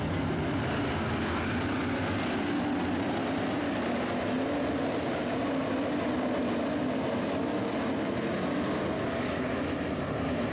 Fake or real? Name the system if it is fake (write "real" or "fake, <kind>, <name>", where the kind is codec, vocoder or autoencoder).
real